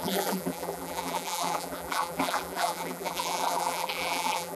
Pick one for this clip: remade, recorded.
remade